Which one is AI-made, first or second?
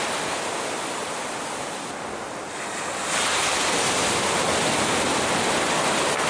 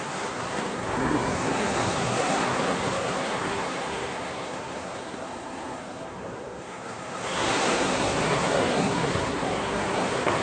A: second